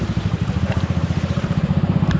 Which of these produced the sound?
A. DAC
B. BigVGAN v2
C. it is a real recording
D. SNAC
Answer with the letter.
B